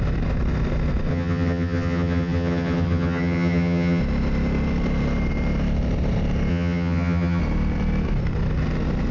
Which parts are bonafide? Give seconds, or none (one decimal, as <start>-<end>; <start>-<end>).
0.0-1.1; 4.0-6.5; 7.4-9.1